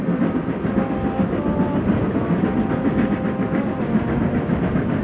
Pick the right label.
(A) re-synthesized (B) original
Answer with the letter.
B